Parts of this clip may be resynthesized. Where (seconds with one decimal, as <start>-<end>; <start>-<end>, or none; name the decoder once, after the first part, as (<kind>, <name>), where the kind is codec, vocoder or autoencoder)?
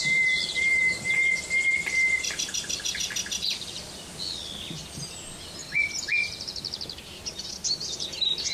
none